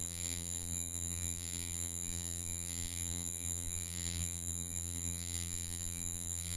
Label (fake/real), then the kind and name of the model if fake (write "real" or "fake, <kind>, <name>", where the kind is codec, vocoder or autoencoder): fake, vocoder, BigVGAN v2